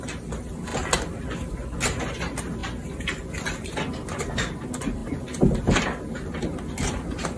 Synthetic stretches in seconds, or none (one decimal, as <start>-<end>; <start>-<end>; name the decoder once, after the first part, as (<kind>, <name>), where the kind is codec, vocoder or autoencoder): none